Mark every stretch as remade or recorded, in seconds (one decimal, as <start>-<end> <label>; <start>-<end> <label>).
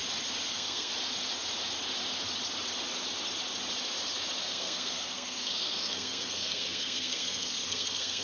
0.0-0.5 recorded; 0.5-0.9 remade; 0.9-4.4 recorded; 4.4-8.2 remade